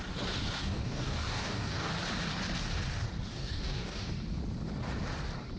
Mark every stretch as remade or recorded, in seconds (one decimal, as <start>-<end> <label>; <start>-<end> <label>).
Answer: 0.0-0.6 recorded; 0.6-1.9 remade; 1.9-3.3 recorded; 3.3-4.1 remade; 4.1-5.6 recorded